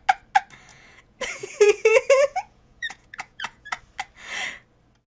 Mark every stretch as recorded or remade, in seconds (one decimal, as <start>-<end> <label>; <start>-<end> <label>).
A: 0.0-0.7 recorded; 0.7-3.8 remade; 3.8-5.1 recorded